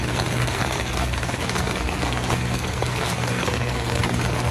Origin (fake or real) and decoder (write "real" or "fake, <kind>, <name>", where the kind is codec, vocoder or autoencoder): fake, codec, SNAC